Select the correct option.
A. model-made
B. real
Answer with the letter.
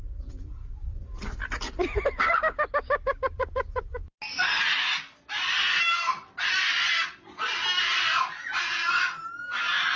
B